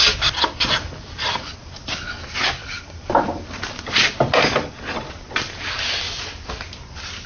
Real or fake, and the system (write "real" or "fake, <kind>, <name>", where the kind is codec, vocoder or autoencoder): real